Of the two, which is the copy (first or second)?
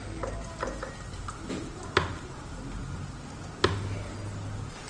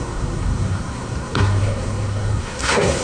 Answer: second